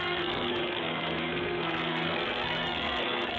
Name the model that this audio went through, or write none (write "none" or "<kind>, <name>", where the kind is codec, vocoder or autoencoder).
codec, SNAC